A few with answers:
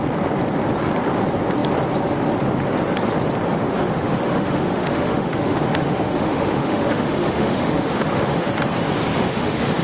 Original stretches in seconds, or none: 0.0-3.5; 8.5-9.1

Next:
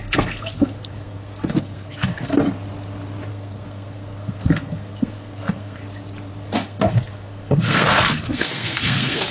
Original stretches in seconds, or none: 2.3-3.3; 5.8-6.4

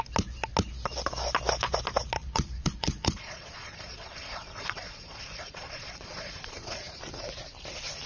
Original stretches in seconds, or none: 0.0-2.2; 7.0-8.1

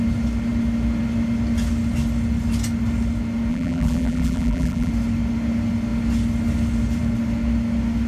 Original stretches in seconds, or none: 0.0-3.5; 4.9-8.1

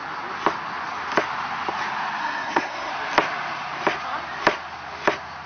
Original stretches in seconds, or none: 0.0-2.2; 2.9-5.5

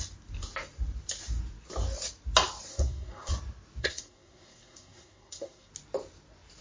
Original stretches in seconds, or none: 0.0-2.7; 3.3-3.8; 5.7-6.6

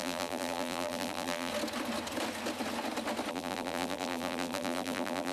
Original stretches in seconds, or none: 1.5-3.3

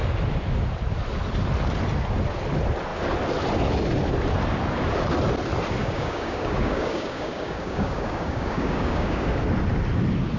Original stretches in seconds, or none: 0.0-5.8; 9.3-10.4